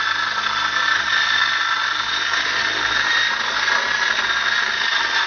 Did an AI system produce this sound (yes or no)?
no